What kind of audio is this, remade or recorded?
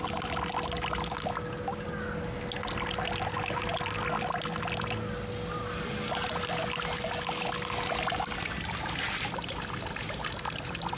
recorded